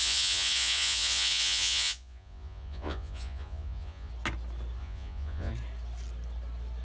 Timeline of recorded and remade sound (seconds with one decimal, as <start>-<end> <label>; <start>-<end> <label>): 0.0-4.1 remade; 4.1-4.8 recorded; 4.8-5.5 remade; 5.5-6.8 recorded